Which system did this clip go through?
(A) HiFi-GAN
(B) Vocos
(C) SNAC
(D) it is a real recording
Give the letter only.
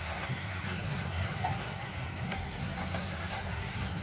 C